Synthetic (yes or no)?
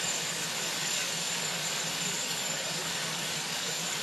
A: yes